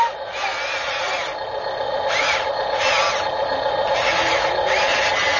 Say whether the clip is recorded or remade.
recorded